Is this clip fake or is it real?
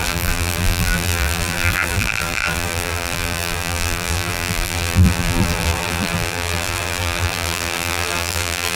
fake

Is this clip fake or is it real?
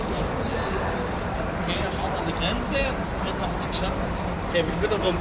real